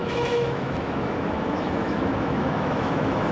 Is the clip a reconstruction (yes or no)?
yes